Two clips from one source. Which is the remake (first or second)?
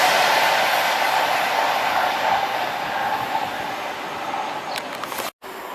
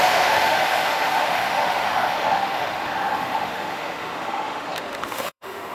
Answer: second